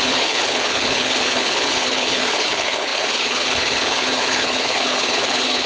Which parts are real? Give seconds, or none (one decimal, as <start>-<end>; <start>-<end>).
none